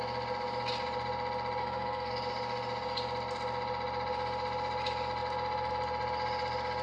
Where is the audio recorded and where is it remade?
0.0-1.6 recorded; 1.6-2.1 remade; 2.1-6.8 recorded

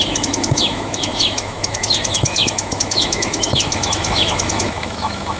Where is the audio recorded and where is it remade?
0.0-5.4 remade

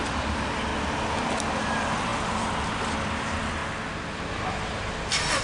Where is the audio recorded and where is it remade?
0.0-0.7 remade; 0.7-1.6 recorded; 1.6-3.6 remade; 3.6-4.5 recorded; 4.5-5.4 remade

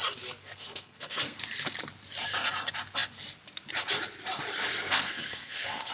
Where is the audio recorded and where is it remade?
0.0-0.4 recorded; 0.4-1.4 remade; 1.4-4.7 recorded; 4.7-5.9 remade

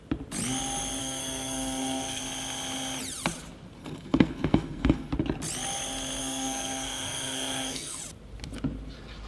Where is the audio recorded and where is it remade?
0.0-1.0 recorded; 1.0-2.2 remade; 2.2-3.8 recorded; 3.8-5.1 remade; 5.1-6.2 recorded; 6.2-8.0 remade; 8.0-9.3 recorded

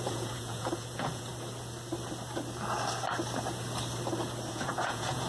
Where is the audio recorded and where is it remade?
0.0-1.3 remade; 1.3-4.5 recorded; 4.5-5.3 remade

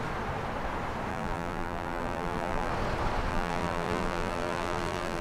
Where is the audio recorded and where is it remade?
0.0-1.1 recorded; 1.1-2.7 remade; 2.7-3.3 recorded; 3.3-5.2 remade